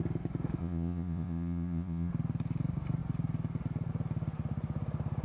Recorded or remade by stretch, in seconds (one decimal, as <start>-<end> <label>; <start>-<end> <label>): 0.0-0.6 recorded; 0.6-2.1 remade; 2.1-5.2 recorded